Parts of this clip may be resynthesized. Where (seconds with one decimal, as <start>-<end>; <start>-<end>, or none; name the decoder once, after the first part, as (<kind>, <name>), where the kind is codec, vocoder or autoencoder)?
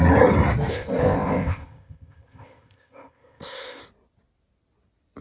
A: 0.7-3.8 (codec, ZipCodec)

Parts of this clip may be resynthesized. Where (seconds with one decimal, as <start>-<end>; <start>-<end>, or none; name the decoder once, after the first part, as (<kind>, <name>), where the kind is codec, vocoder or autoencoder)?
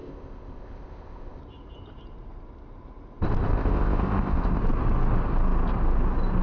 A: 0.0-1.4 (codec, ZipCodec); 3.5-4.6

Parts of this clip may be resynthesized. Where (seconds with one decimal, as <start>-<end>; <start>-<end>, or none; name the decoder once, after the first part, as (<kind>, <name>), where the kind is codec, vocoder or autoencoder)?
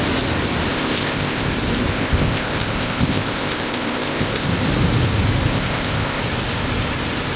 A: 0.7-1.5 (codec, ZipCodec); 1.9-4.5; 5.5-6.2